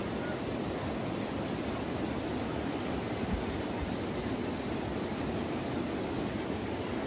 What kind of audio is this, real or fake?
fake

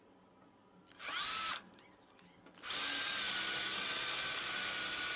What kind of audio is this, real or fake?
real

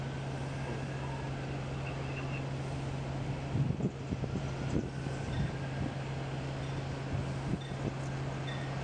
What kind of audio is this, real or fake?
real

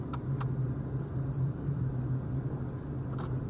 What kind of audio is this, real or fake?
real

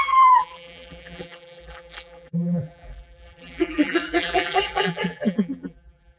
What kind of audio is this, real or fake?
fake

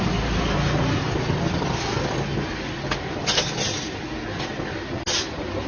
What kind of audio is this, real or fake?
real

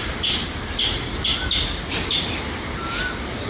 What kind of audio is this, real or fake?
real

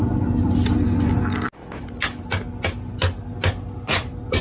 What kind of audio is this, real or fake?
real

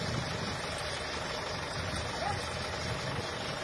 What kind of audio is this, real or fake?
real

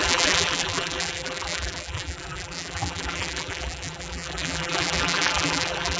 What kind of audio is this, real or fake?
fake